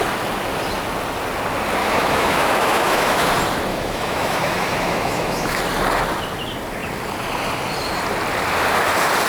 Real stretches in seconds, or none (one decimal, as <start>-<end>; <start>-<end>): 0.0-1.8; 3.3-3.7; 5.6-9.3